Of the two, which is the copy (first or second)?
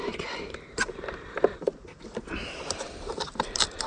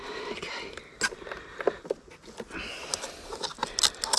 first